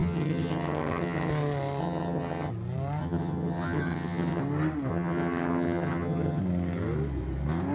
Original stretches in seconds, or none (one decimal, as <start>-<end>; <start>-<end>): 1.3-1.8; 2.5-3.0; 4.4-4.9; 6.4-7.7